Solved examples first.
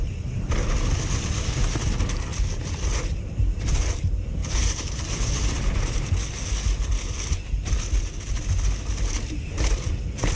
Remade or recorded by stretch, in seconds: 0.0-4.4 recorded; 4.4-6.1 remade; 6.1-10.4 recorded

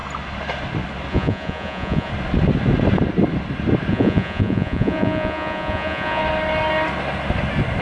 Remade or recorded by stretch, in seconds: 0.0-1.1 recorded; 1.1-2.1 remade; 2.1-3.9 recorded; 3.9-6.2 remade; 6.2-7.8 recorded